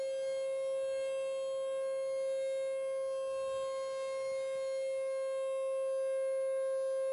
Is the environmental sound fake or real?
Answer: real